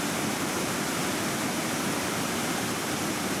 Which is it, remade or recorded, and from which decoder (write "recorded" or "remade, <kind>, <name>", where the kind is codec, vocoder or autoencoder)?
remade, vocoder, BigVGAN v2